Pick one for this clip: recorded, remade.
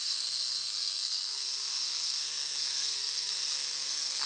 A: remade